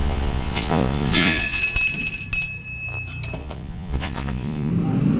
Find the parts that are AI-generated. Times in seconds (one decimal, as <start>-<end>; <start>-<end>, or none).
0.0-1.6; 3.4-4.7